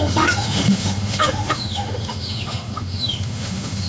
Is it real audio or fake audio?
fake